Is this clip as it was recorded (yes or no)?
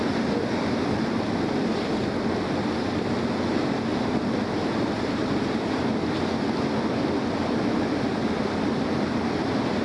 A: yes